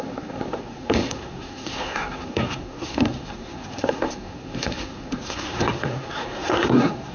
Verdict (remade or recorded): remade